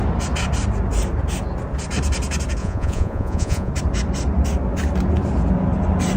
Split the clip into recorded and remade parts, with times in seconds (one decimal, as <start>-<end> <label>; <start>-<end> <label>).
0.0-2.6 recorded; 2.6-3.7 remade; 3.7-6.2 recorded